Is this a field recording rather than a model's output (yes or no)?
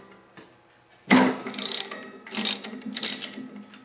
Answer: yes